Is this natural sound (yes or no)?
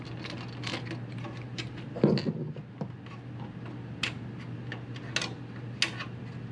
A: yes